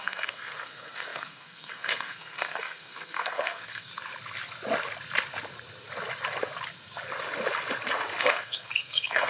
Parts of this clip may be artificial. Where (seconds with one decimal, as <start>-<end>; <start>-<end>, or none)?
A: 0.0-3.9; 8.2-9.3